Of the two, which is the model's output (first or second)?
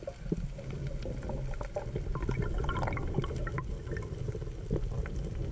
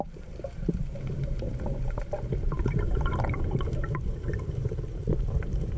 second